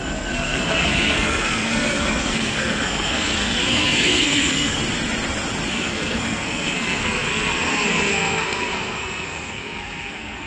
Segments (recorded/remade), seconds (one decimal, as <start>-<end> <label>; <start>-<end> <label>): 0.0-4.8 remade; 4.8-5.7 recorded; 5.7-10.5 remade